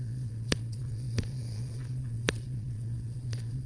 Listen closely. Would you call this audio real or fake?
fake